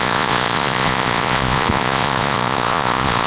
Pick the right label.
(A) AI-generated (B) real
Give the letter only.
A